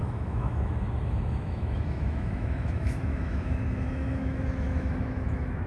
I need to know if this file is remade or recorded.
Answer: remade